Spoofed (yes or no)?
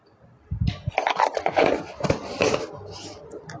no